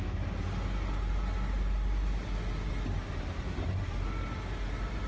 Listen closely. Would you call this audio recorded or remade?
recorded